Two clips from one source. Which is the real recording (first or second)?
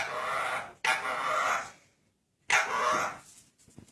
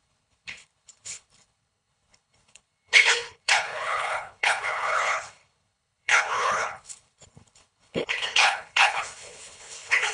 first